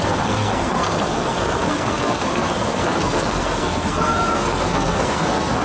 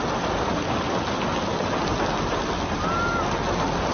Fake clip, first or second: first